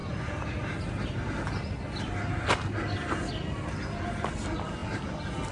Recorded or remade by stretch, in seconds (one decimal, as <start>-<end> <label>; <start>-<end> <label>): 0.0-5.5 recorded